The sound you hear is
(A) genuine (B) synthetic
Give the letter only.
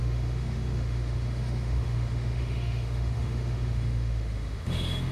B